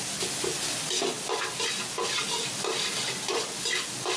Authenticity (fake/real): real